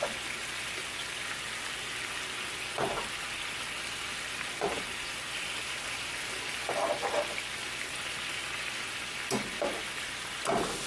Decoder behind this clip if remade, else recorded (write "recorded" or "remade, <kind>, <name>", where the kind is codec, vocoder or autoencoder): recorded